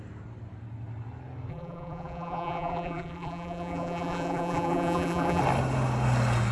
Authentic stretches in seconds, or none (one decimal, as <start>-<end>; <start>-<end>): 0.0-1.5; 5.4-6.5